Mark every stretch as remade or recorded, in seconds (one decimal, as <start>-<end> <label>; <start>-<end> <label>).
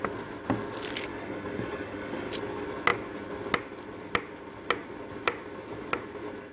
0.0-1.1 recorded; 1.1-2.3 remade; 2.3-6.5 recorded